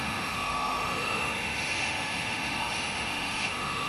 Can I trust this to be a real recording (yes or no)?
no